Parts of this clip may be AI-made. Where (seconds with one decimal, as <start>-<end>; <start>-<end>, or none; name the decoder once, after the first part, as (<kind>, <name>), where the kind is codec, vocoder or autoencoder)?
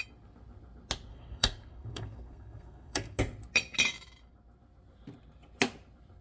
1.1-3.2 (codec, SNAC)